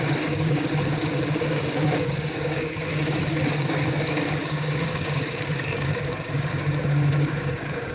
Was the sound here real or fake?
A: fake